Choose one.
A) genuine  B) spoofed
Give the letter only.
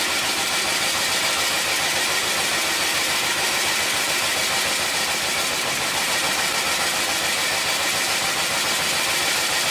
A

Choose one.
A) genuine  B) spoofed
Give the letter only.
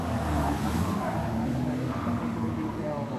B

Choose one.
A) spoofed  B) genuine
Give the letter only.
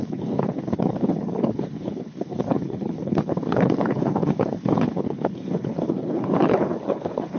A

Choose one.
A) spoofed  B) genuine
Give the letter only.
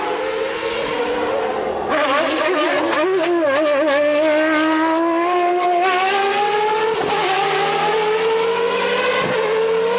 B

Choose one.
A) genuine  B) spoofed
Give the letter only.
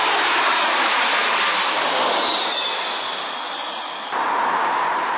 A